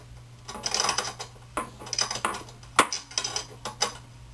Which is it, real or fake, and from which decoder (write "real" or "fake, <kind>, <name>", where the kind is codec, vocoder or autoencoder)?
real